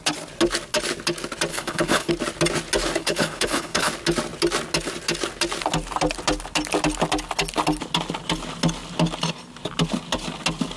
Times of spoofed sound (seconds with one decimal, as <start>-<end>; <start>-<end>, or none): 1.5-2.1; 3.0-3.9